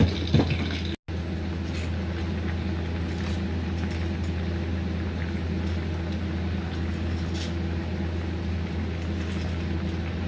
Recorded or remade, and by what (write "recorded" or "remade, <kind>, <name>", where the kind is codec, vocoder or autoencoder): recorded